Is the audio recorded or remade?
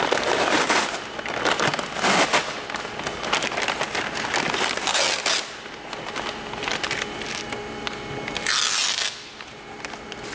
recorded